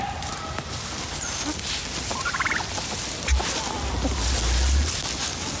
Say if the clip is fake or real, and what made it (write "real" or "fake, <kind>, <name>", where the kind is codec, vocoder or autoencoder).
real